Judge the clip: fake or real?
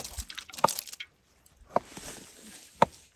real